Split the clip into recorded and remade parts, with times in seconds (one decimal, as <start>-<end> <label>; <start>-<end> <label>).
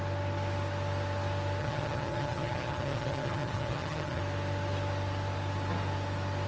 0.0-1.6 recorded; 1.6-4.2 remade; 4.2-6.5 recorded